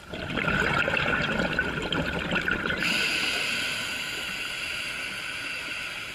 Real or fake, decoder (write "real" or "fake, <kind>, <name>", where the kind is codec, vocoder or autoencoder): real